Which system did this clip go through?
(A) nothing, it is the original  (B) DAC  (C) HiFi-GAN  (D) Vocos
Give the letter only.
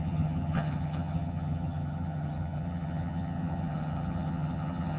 C